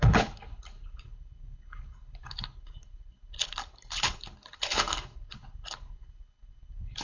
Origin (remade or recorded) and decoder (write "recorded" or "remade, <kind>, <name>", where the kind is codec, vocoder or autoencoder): remade, codec, HILCodec